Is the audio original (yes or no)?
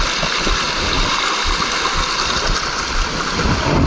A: yes